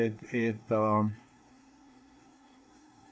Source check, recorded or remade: remade